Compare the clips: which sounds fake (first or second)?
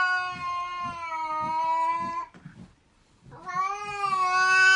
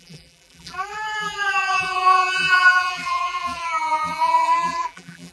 second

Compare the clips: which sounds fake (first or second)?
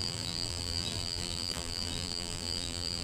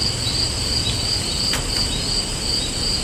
first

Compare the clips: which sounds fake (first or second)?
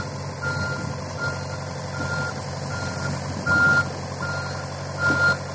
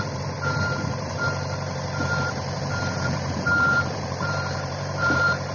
second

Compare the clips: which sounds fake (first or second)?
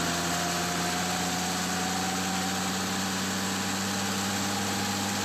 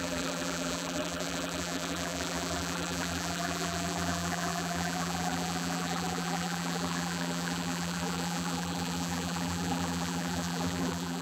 second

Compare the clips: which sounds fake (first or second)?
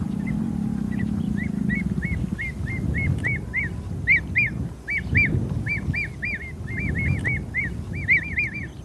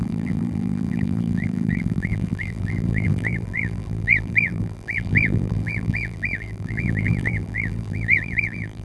second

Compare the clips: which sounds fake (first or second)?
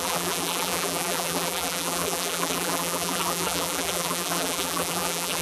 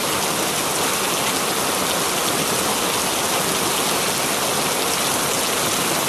first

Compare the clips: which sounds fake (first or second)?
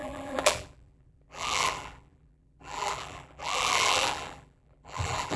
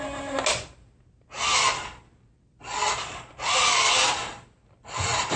first